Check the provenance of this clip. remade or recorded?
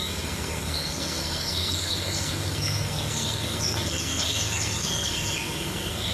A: remade